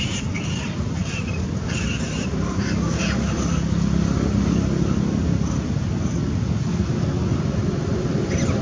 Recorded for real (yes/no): yes